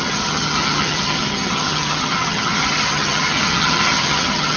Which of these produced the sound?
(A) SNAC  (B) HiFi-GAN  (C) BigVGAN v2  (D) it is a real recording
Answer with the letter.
B